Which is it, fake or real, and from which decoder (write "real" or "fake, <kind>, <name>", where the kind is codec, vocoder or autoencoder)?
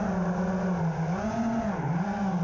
real